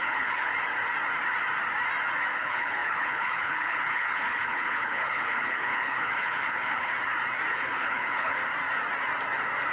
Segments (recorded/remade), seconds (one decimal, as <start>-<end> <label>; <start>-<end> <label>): 0.0-0.5 remade; 0.5-2.4 recorded; 2.4-6.9 remade; 6.9-7.5 recorded; 7.5-8.4 remade; 8.4-9.7 recorded